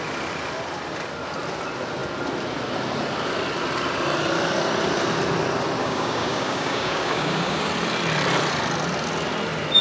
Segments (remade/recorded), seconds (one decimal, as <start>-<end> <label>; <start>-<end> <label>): 0.0-5.8 recorded; 5.8-7.7 remade; 7.7-9.8 recorded